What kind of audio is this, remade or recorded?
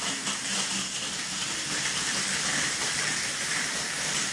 remade